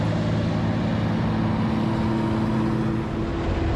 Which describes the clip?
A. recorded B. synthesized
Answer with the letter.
A